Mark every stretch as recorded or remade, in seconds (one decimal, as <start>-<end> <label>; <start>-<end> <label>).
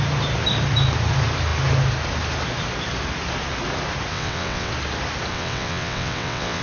0.0-4.1 recorded; 4.1-4.7 remade; 4.7-5.3 recorded; 5.3-6.6 remade